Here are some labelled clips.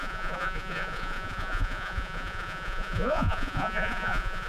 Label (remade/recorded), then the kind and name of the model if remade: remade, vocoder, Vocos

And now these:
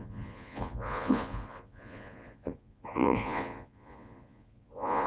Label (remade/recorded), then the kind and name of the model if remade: remade, vocoder, Vocos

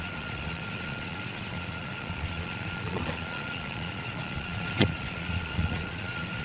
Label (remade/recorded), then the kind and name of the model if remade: remade, vocoder, Vocos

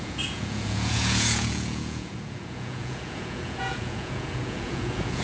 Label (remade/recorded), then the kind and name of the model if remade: remade, vocoder, Vocos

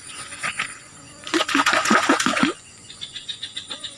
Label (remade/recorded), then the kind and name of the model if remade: remade, vocoder, Vocos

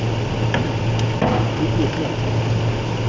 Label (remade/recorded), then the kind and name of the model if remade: recorded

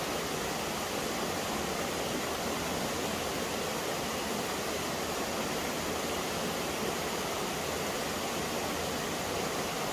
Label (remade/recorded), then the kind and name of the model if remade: recorded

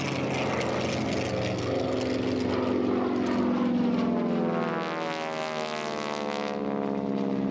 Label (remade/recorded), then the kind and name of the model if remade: recorded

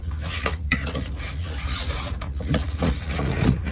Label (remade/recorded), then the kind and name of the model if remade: remade, vocoder, Vocos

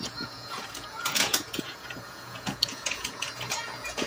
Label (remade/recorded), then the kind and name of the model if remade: remade, vocoder, Vocos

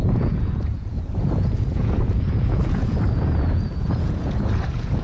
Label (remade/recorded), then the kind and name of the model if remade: remade, vocoder, Vocos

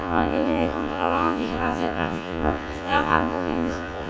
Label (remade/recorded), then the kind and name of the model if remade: remade, vocoder, Vocos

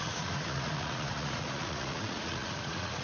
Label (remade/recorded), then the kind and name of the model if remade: remade, vocoder, Vocos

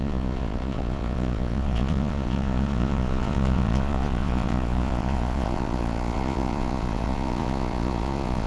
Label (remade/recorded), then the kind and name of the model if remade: remade, vocoder, Vocos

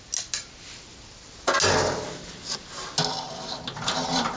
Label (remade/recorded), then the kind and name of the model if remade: recorded